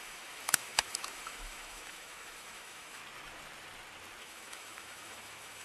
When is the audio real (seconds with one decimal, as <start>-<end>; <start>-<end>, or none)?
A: 3.0-4.2